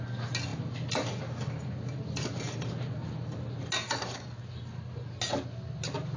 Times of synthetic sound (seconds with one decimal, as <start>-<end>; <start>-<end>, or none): none